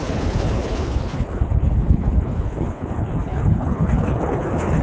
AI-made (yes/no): yes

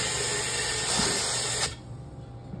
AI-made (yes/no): no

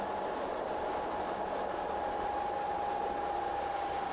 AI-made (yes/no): no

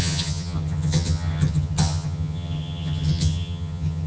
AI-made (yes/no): yes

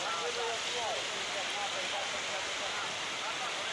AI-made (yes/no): no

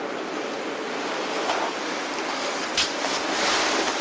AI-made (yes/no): no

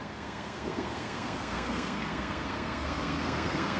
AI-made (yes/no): yes